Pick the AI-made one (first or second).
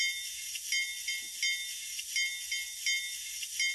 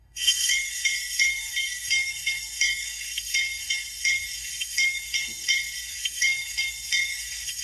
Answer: second